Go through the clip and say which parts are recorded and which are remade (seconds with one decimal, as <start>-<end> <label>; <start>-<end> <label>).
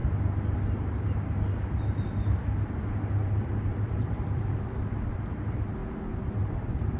0.0-3.2 recorded; 3.2-5.3 remade; 5.3-7.0 recorded